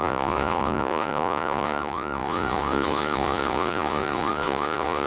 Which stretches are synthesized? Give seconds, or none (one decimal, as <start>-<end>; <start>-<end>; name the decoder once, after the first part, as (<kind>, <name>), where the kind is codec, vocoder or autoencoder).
0.0-5.1 (vocoder, Vocos)